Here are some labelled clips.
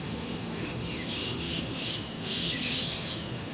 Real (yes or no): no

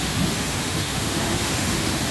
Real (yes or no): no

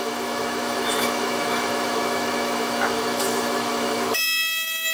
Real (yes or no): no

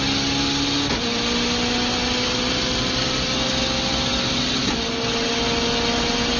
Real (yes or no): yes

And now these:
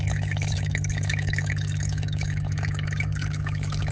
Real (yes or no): no